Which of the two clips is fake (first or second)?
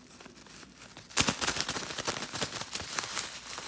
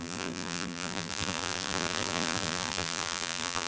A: second